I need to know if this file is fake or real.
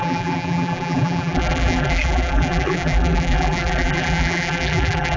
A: fake